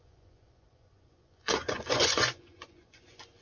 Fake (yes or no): yes